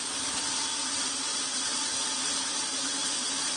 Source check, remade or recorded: recorded